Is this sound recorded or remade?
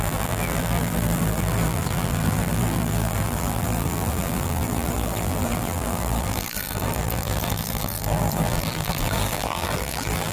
remade